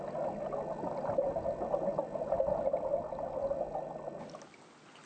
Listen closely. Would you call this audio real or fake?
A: real